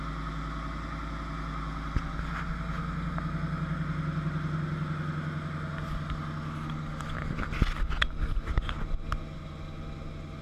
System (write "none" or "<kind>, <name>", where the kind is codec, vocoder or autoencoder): none